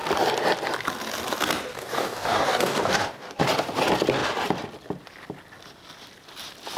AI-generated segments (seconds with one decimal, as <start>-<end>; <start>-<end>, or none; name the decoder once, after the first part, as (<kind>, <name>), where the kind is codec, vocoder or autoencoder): 1.7-3.4 (codec, DAC)